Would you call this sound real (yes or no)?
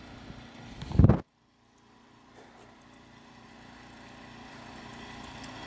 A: yes